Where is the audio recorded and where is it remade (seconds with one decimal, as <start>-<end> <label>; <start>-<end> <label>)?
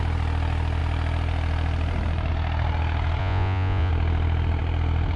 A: 0.0-3.2 recorded; 3.2-3.9 remade; 3.9-5.2 recorded